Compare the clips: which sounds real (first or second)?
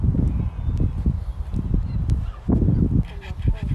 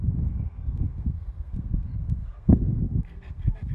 first